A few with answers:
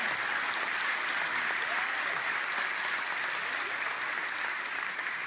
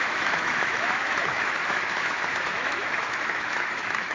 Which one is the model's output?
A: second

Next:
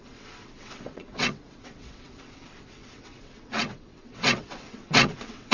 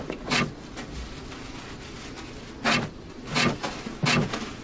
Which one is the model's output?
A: first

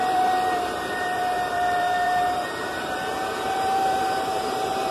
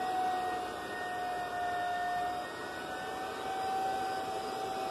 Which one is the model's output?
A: first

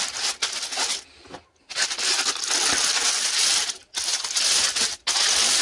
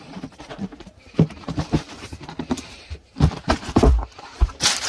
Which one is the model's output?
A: second